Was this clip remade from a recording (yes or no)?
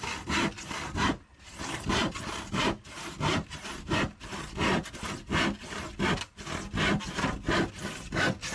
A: no